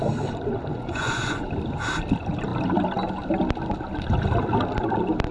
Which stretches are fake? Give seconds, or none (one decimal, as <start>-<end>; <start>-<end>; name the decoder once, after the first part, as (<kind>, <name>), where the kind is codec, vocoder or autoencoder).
0.7-1.5 (vocoder, Vocos)